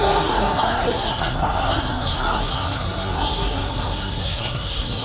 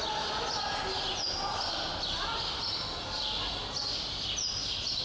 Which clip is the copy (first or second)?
first